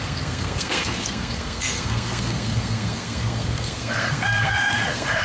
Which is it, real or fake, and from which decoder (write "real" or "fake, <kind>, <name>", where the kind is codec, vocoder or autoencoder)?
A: fake, codec, SNAC